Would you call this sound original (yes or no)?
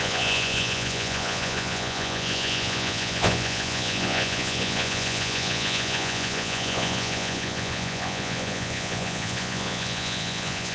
no